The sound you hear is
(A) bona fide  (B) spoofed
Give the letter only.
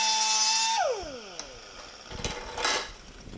A